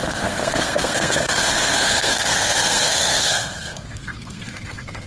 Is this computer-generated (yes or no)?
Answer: yes